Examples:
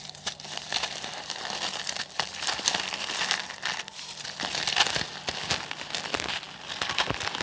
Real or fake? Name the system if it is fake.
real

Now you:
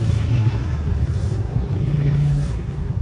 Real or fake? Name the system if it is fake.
fake, codec, SNAC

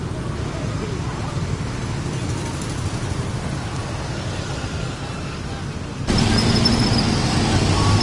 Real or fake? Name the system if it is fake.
real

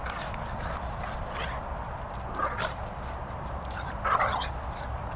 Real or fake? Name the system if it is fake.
real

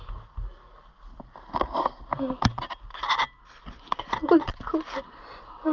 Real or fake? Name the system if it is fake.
real